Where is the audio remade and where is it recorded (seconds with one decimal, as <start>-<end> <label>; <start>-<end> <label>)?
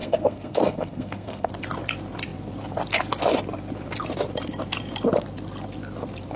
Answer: 0.0-1.5 remade; 1.5-6.4 recorded